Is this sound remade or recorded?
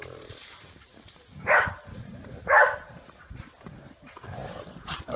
remade